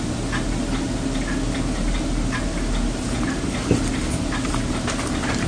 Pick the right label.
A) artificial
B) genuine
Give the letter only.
B